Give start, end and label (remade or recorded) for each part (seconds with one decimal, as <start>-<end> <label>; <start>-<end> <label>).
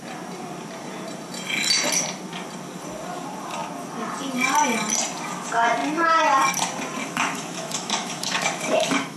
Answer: 0.0-7.0 recorded; 7.0-9.2 remade